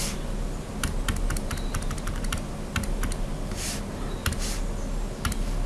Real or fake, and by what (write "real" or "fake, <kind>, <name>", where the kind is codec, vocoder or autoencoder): real